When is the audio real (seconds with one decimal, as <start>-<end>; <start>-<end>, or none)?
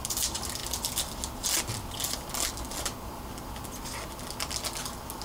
0.0-5.2